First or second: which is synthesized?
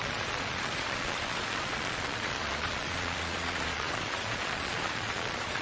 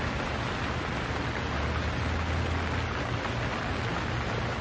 first